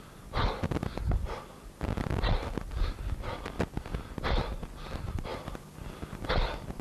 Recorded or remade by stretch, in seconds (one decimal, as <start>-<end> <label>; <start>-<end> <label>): 0.0-6.8 recorded